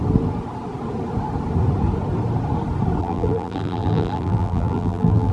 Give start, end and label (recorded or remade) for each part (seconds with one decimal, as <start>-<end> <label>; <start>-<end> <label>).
0.0-3.0 recorded; 3.0-5.3 remade